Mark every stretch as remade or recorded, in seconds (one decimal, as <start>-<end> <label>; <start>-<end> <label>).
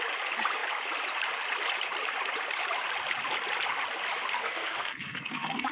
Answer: 0.0-4.4 recorded; 4.4-5.7 remade